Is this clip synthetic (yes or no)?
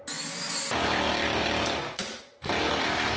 no